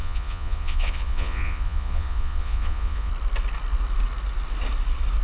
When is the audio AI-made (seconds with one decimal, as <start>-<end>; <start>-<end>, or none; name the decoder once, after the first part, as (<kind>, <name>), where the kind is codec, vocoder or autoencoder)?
0.0-3.1 (vocoder, Vocos)